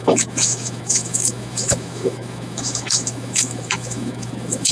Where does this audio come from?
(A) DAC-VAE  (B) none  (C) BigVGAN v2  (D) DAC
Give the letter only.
A